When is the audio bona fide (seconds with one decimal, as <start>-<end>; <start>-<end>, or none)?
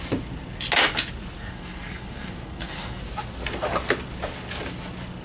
0.0-1.4; 3.0-5.2